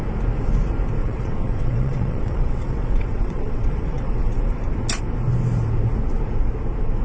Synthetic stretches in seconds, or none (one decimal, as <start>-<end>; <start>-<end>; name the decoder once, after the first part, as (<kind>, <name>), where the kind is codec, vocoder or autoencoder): 1.0-4.6 (vocoder, WaveNeXt)

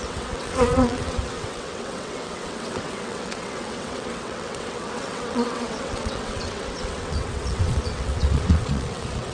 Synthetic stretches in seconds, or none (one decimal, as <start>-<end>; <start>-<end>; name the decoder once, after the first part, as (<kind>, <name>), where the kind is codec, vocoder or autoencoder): 0.0-9.3 (vocoder, WaveNeXt)

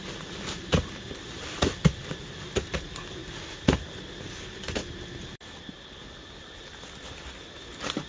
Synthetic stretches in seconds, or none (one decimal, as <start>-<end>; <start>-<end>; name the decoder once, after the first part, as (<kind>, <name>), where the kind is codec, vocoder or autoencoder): none

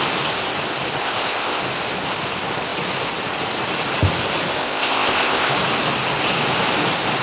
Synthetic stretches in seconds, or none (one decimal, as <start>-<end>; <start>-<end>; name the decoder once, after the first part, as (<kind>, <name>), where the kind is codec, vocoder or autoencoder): 1.0-1.6 (codec, ZipCodec); 4.6-5.5

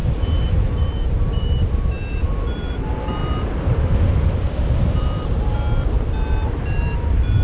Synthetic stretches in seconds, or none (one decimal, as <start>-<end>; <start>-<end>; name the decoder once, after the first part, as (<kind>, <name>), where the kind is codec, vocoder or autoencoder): 0.0-3.2 (vocoder, BigVGAN v2); 6.5-7.4

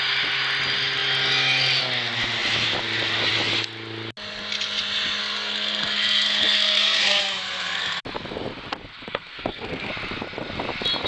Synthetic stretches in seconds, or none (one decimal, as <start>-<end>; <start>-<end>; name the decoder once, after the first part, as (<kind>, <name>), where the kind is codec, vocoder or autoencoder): 5.2-8.0 (codec, SNAC); 8.9-9.9

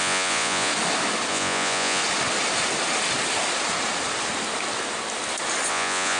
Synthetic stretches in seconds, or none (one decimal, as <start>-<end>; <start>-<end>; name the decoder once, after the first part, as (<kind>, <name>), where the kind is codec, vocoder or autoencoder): 0.0-0.7 (vocoder, Vocos); 1.3-2.0; 5.7-6.2